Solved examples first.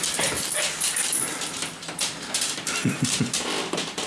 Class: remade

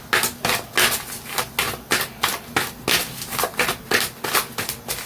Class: recorded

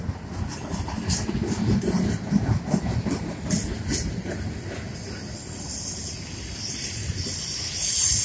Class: recorded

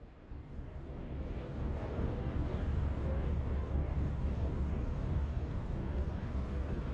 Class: remade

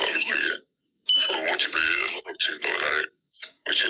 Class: remade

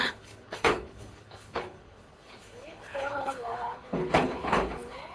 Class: remade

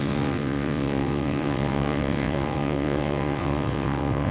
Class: remade